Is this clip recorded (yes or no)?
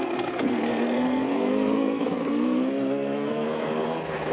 no